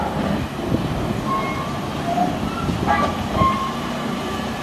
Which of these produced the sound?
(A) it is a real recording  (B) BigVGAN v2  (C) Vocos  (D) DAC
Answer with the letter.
B